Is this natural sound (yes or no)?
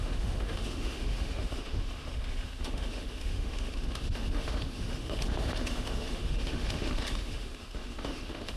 no